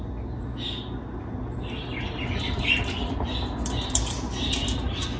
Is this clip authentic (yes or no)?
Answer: yes